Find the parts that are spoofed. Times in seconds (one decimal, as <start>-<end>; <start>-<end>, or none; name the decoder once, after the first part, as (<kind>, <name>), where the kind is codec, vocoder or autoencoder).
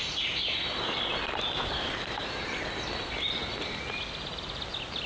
none